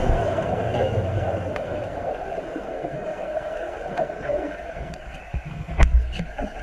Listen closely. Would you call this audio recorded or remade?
remade